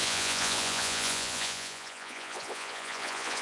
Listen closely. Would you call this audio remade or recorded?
remade